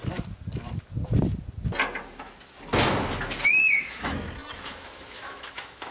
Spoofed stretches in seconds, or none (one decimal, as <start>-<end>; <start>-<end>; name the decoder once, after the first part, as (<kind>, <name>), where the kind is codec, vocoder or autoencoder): 3.5-5.9 (autoencoder, DAC-VAE)